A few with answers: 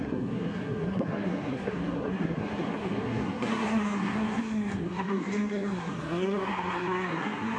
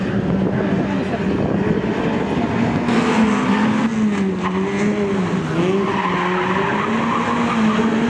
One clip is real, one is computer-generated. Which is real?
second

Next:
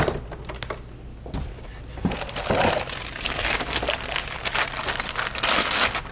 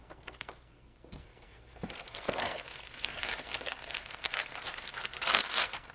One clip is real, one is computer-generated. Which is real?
first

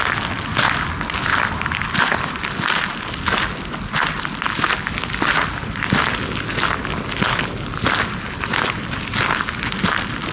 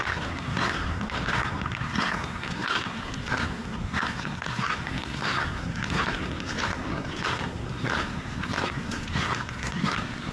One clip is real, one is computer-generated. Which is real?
first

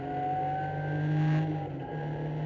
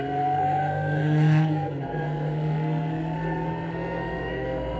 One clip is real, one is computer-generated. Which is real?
first